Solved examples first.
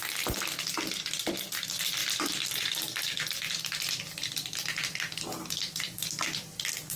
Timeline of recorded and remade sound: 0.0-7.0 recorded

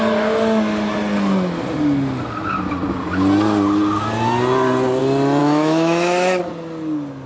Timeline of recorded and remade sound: 0.0-5.4 recorded; 5.4-6.4 remade; 6.4-7.3 recorded

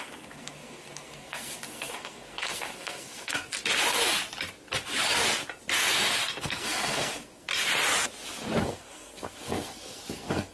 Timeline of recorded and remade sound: 0.0-3.5 remade; 3.5-6.4 recorded; 6.4-7.5 remade; 7.5-8.6 recorded; 8.6-10.5 remade